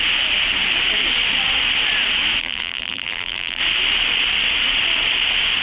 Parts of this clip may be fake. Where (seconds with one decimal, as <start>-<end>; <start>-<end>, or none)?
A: 2.4-3.6